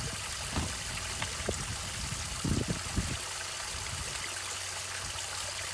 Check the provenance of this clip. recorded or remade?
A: recorded